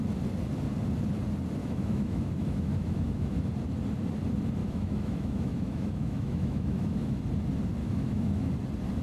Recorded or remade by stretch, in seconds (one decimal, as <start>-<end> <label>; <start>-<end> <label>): 0.0-1.6 recorded; 1.6-3.5 remade; 3.5-4.6 recorded; 4.6-7.2 remade; 7.2-7.8 recorded; 7.8-8.5 remade; 8.5-9.0 recorded